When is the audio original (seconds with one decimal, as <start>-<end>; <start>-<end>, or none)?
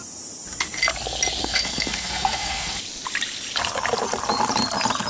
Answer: 0.0-1.4; 2.8-5.1